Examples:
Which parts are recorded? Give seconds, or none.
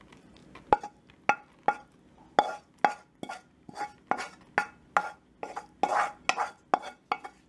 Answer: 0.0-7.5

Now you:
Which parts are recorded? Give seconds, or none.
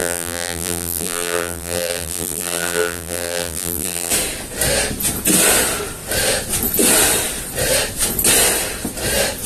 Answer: 4.1-9.5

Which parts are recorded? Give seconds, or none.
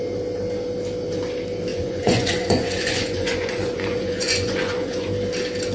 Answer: 0.0-1.7; 5.1-5.7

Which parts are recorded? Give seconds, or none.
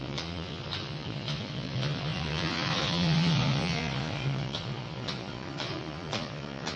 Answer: none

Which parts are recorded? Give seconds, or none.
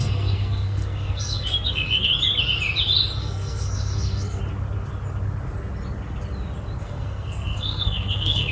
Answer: 2.1-3.2; 4.4-6.8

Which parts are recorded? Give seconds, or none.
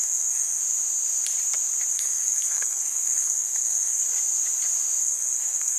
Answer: 0.6-1.9; 4.0-5.0